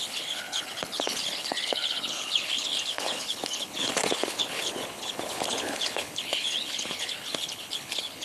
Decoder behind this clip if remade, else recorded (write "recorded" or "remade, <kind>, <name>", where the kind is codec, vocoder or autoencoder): remade, codec, HILCodec